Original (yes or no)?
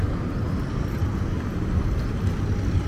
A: yes